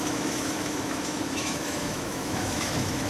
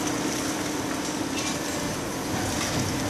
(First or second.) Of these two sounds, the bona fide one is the second